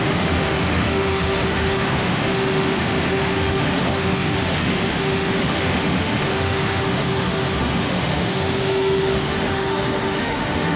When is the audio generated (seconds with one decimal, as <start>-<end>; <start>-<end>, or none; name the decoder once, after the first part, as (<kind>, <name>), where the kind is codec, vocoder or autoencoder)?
0.0-10.8 (autoencoder, DAC-VAE)